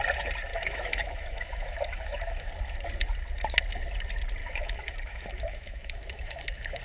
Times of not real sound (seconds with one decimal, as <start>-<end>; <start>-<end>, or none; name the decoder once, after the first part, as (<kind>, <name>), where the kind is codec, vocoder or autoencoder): 0.5-2.5 (autoencoder, DAC-VAE); 4.4-6.8